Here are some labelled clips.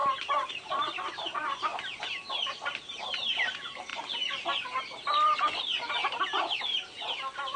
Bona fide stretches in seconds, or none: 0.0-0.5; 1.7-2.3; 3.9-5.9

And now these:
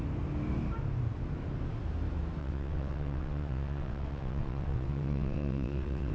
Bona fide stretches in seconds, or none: 0.0-2.4

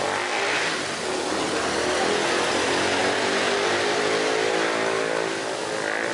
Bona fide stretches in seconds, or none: 0.0-6.1

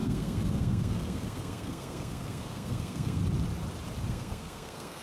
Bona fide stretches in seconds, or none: 3.2-4.1

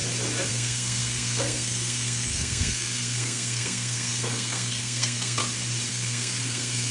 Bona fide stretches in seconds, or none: 0.0-0.5; 5.4-5.9

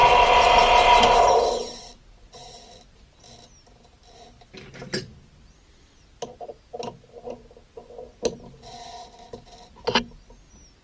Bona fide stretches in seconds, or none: 0.0-10.8